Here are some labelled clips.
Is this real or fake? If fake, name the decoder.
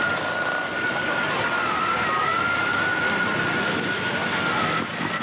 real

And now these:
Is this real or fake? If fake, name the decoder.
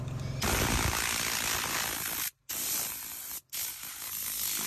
real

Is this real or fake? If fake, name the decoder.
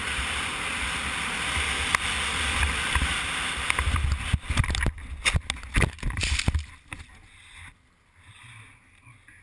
real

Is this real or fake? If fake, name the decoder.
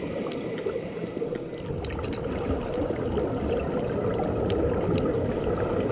real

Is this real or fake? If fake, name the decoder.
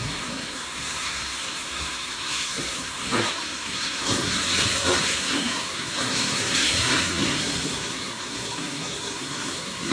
fake, codec, SNAC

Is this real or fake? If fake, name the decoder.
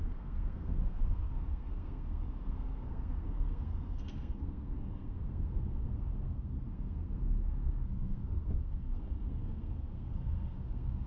fake, codec, SNAC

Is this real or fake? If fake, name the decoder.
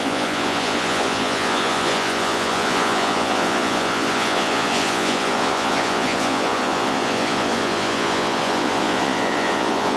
fake, vocoder, Vocos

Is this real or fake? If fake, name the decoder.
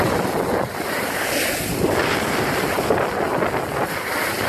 real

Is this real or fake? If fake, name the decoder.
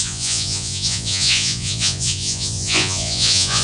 fake, vocoder, Vocos